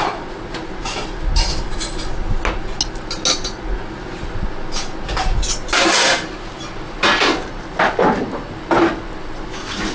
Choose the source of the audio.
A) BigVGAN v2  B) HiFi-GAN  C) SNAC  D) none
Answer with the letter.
D